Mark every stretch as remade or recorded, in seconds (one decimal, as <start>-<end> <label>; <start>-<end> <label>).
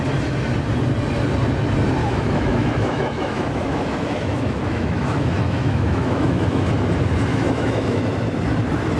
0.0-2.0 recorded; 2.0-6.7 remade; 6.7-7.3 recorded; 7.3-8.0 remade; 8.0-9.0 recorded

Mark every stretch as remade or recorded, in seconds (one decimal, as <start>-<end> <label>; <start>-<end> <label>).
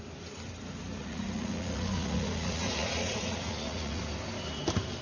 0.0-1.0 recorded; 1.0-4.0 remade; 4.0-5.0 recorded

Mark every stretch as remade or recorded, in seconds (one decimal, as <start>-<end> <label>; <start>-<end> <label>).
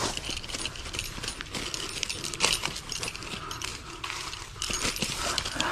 0.0-5.7 recorded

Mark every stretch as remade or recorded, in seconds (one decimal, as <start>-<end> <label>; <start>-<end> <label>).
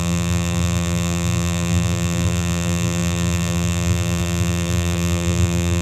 0.0-5.8 remade